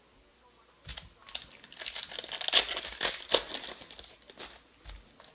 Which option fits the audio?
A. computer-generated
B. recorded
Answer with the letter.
B